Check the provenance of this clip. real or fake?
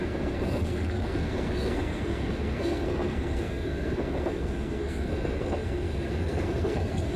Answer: fake